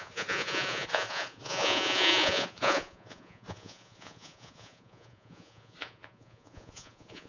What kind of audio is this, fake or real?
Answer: fake